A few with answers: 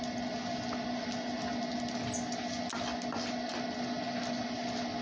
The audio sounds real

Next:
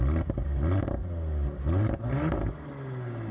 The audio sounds real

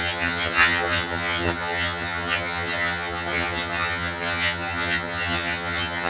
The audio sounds fake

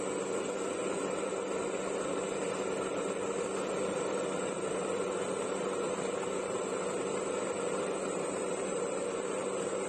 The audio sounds real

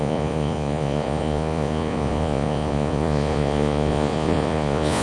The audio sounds fake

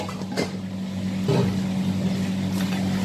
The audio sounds real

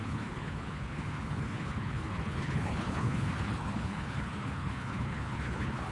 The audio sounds fake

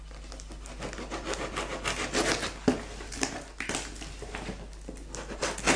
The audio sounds real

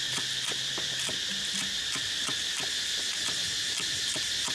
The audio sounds real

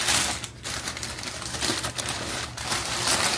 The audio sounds real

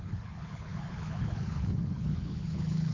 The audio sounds fake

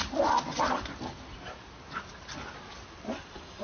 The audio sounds real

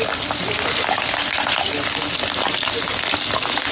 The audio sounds real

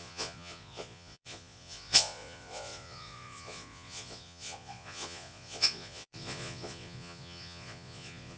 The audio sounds fake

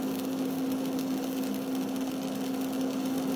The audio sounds real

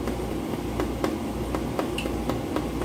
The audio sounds real